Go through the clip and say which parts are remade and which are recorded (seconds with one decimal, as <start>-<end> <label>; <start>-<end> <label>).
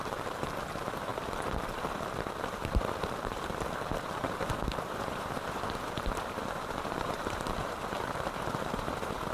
0.0-1.1 remade; 1.1-2.4 recorded; 2.4-9.3 remade